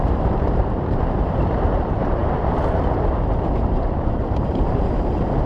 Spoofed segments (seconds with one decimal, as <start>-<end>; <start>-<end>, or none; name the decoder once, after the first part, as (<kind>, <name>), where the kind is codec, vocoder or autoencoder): 0.0-2.2 (vocoder, BigVGAN v2); 3.3-5.5